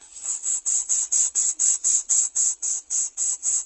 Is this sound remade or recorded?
remade